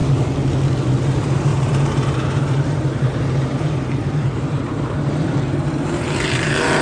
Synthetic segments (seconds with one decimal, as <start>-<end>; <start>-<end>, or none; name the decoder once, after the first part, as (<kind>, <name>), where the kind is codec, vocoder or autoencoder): 1.0-6.8 (vocoder, BigVGAN v2)